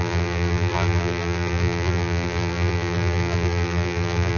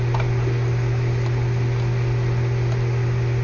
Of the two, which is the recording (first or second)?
second